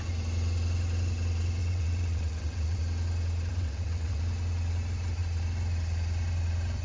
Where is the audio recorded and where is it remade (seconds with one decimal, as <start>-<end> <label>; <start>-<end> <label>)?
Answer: 0.0-1.6 recorded; 1.6-2.8 remade; 2.8-3.5 recorded; 3.5-4.2 remade; 4.2-6.8 recorded